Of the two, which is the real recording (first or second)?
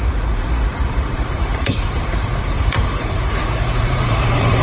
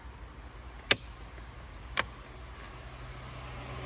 second